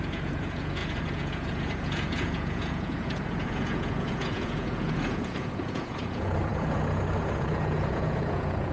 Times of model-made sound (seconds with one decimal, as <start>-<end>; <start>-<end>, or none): 0.0-8.7